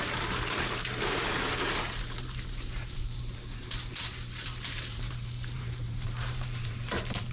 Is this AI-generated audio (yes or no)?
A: yes